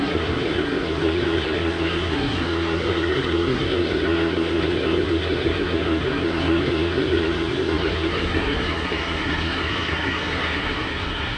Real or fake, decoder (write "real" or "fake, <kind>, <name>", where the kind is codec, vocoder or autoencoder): fake, codec, SNAC